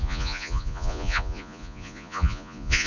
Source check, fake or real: fake